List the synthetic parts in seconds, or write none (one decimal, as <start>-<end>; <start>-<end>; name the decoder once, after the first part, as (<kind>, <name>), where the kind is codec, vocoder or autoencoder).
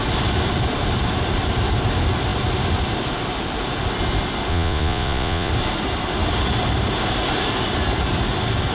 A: 4.5-5.5 (vocoder, Vocos)